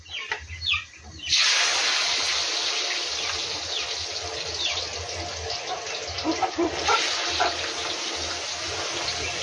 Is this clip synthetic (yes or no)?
no